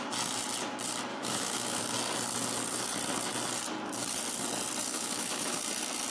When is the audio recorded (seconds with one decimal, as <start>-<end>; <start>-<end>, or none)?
0.0-1.1; 1.8-4.9; 5.6-6.1